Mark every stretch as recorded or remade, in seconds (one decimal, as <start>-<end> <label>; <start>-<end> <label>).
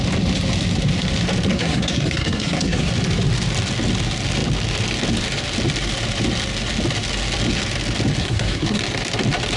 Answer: 0.0-1.5 recorded; 1.5-2.9 remade; 2.9-8.2 recorded; 8.2-8.8 remade; 8.8-9.6 recorded